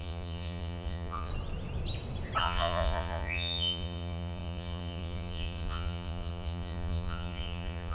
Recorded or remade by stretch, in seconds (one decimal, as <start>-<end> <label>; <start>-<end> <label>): 0.0-1.3 remade; 1.3-2.4 recorded; 2.4-7.9 remade